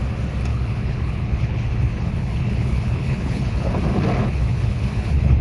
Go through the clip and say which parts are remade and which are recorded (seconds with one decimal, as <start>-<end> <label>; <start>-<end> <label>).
0.0-0.5 recorded; 0.5-3.7 remade; 3.7-4.2 recorded; 4.2-5.4 remade